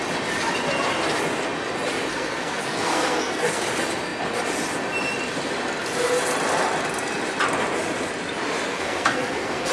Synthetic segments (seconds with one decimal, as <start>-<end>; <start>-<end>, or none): 2.1-3.6; 8.7-9.7